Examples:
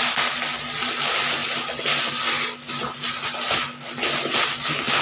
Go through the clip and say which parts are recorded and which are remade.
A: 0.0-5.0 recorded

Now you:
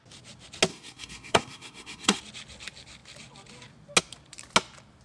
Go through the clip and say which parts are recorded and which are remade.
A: 0.0-0.7 recorded; 0.7-2.2 remade; 2.2-5.0 recorded

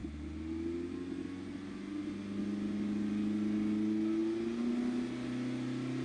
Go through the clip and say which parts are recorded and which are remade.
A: 0.0-6.0 recorded

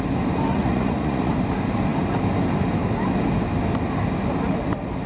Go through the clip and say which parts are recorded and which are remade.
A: 0.0-0.5 recorded; 0.5-1.3 remade; 1.3-5.1 recorded

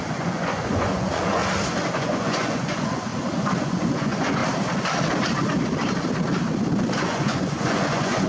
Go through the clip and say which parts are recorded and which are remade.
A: 0.0-1.4 remade; 1.4-2.0 recorded; 2.0-3.1 remade; 3.1-3.6 recorded; 3.6-4.4 remade; 4.4-7.0 recorded; 7.0-8.3 remade